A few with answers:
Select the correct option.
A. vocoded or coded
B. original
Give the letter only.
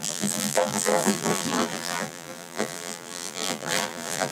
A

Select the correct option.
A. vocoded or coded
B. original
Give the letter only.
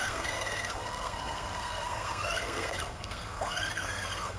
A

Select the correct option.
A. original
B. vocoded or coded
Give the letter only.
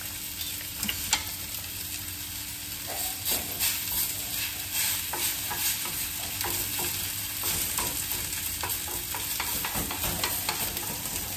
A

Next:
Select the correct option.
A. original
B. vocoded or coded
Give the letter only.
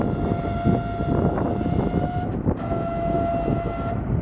A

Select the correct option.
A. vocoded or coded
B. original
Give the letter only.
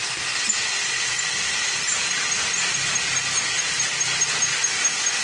B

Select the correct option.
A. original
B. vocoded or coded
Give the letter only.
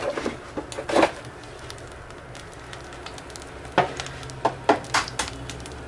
A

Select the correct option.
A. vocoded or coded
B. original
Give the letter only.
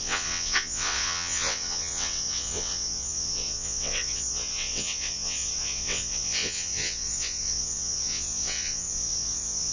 A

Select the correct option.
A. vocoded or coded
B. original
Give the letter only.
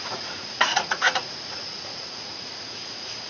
A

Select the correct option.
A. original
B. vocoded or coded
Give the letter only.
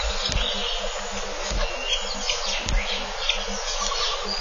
A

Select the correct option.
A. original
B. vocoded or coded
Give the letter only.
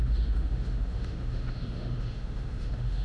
B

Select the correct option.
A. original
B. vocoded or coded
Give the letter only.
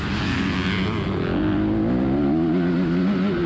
A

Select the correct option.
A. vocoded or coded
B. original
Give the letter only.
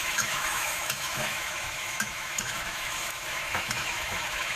A